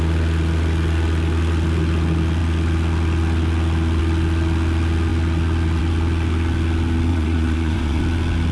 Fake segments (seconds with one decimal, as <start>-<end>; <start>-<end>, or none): 7.1-8.0